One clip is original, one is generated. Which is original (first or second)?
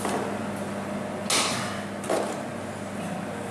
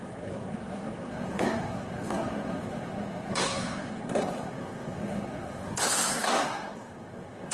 first